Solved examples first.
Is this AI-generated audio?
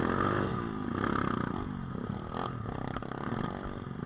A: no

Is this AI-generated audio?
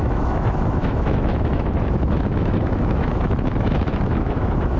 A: yes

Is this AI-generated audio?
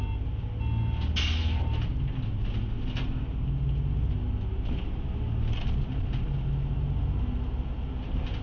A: no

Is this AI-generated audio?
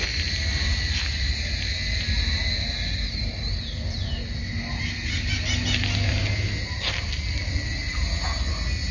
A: no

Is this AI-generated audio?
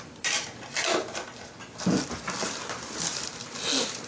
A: no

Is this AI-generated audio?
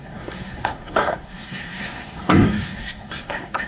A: yes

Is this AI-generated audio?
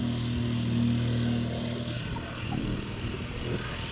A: no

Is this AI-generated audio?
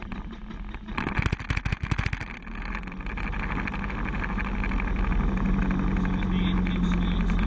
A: no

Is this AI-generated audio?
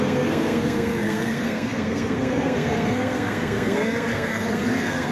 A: yes